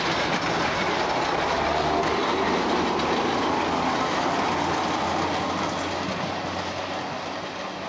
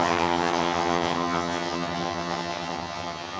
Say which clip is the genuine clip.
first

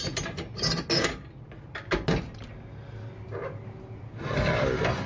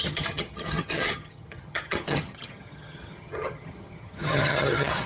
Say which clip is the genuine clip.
first